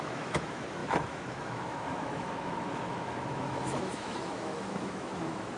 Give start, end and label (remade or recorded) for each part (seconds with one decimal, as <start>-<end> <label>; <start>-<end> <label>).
0.0-5.6 remade